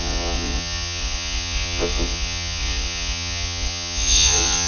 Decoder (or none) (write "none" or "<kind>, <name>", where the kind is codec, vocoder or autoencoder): vocoder, Vocos